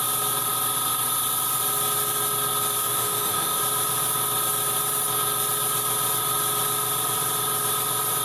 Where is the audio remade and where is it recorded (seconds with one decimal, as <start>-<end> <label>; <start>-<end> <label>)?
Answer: 0.0-2.8 recorded; 2.8-3.6 remade; 3.6-8.2 recorded